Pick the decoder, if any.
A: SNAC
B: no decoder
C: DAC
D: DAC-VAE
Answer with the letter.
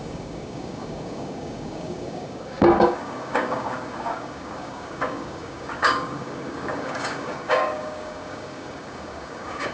C